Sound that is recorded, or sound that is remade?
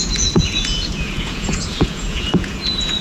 remade